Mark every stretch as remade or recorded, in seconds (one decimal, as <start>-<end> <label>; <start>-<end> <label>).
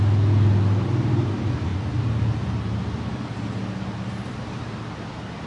0.0-5.5 recorded